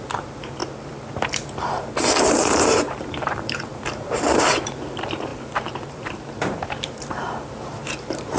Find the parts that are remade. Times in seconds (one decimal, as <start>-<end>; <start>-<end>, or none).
0.0-0.6; 1.1-8.4